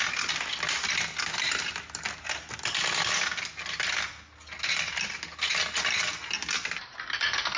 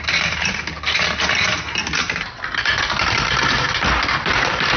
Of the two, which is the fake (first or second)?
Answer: second